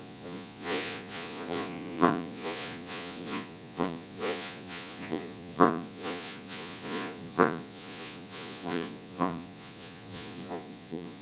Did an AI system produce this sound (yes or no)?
yes